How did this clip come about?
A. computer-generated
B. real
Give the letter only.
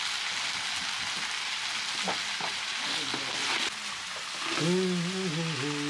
B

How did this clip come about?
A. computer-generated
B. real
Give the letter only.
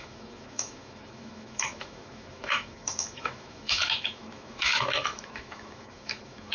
A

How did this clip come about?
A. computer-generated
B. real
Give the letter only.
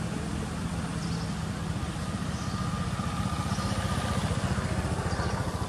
B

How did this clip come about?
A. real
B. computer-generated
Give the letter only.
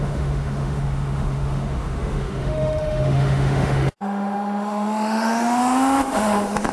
B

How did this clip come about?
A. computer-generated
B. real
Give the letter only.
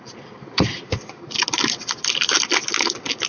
B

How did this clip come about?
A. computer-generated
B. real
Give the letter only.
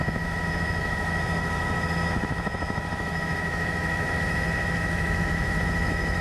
A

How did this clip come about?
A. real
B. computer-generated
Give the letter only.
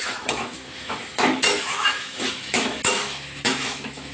B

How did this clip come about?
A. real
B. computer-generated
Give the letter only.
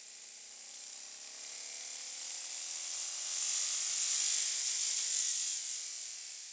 A